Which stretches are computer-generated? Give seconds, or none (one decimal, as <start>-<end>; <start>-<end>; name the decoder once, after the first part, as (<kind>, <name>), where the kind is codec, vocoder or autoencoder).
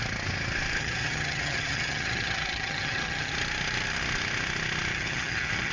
0.8-3.3 (vocoder, HiFi-GAN); 4.9-5.7